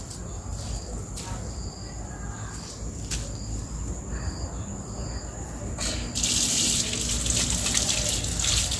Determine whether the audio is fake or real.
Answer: real